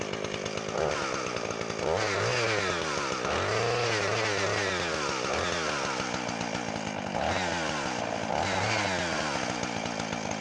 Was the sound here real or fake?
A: real